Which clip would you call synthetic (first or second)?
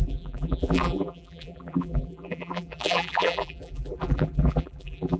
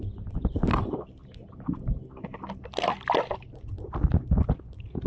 first